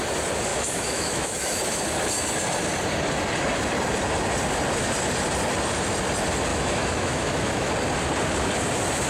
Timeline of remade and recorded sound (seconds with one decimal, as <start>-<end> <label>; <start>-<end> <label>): 0.0-0.5 recorded; 0.5-1.6 remade; 1.6-6.5 recorded; 6.5-7.7 remade; 7.7-9.1 recorded